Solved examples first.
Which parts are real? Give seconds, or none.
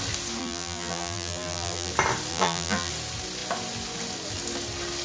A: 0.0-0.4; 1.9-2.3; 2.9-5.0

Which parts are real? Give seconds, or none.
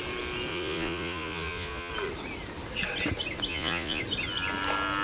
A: 0.0-0.5; 1.9-3.5; 4.0-5.0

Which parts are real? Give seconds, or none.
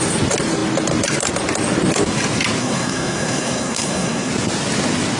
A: 0.0-2.6; 4.3-5.2